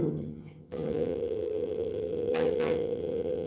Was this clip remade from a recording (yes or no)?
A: yes